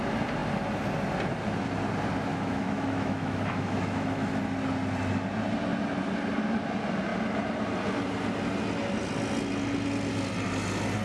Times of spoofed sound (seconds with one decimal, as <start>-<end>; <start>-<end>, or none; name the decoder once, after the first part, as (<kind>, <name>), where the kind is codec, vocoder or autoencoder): 2.3-4.3 (autoencoder, DAC-VAE)